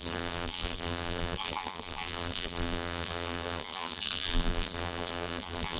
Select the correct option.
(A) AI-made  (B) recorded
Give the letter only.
A